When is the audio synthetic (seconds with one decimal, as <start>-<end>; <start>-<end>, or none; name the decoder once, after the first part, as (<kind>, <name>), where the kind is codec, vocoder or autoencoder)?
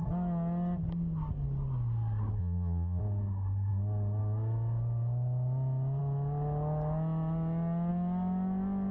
2.4-3.0 (vocoder, Vocos)